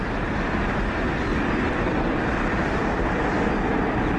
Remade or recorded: remade